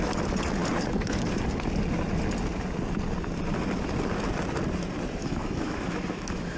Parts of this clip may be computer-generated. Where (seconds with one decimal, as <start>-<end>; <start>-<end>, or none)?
5.2-6.6